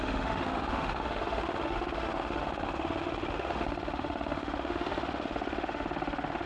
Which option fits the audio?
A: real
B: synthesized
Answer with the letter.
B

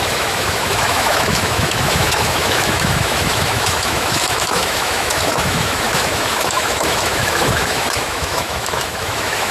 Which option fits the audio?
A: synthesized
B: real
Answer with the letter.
A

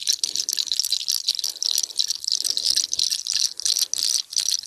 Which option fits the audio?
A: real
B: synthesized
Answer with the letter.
A